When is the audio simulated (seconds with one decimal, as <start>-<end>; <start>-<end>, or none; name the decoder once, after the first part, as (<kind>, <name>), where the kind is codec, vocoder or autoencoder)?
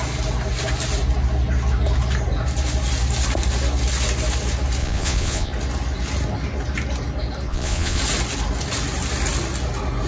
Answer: 4.8-5.5 (vocoder, Vocos); 7.5-8.0